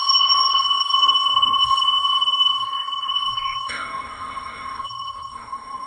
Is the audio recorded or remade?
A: remade